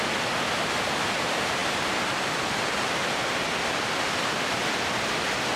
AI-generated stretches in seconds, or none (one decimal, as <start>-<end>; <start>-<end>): 0.0-5.6